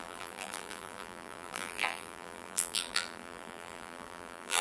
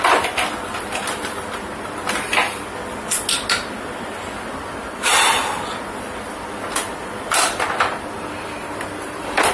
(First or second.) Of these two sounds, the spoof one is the first